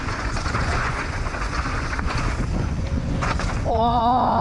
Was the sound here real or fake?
fake